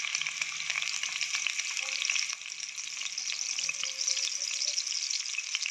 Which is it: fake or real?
real